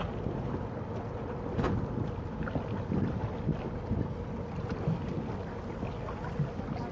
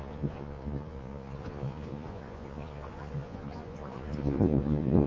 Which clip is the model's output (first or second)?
second